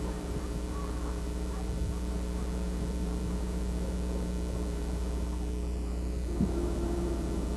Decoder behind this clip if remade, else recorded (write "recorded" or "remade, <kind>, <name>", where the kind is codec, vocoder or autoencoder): remade, vocoder, BigVGAN v2